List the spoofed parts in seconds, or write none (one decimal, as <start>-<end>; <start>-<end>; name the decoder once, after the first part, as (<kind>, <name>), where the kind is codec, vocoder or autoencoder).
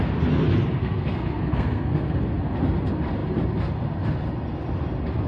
0.8-2.2 (codec, SNAC)